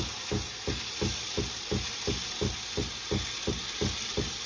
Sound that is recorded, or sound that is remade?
recorded